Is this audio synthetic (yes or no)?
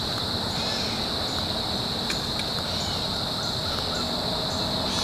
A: no